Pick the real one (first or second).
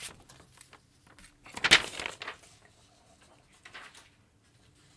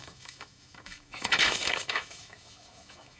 first